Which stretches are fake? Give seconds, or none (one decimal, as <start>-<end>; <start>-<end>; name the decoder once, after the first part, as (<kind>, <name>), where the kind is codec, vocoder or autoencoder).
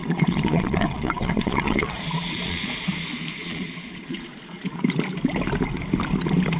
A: 0.0-2.9 (vocoder, Vocos); 3.4-4.8